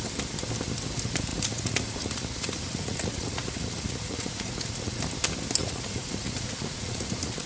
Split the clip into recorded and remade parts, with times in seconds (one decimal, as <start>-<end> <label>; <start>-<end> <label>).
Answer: 0.0-1.3 recorded; 1.3-5.0 remade; 5.0-5.6 recorded; 5.6-7.5 remade